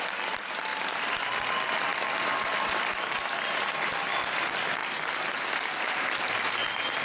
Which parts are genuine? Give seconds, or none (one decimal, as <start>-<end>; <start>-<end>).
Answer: 0.0-7.0